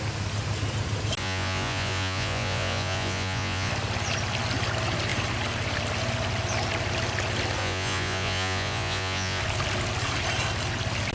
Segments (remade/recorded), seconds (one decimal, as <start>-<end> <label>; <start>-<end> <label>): 0.0-1.2 recorded; 1.2-3.7 remade; 3.7-7.6 recorded; 7.6-9.4 remade; 9.4-11.1 recorded